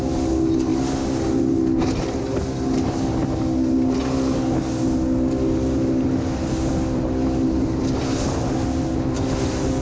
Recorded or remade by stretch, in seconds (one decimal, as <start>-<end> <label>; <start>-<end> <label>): 0.0-9.8 recorded